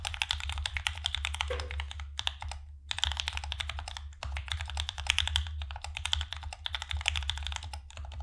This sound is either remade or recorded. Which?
recorded